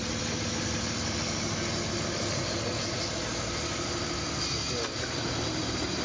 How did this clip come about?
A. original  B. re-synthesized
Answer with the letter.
A